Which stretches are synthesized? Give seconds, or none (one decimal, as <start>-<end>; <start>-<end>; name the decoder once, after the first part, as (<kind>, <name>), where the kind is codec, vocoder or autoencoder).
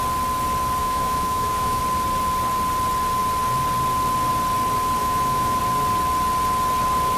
0.8-1.8 (autoencoder, DAC-VAE); 5.0-5.6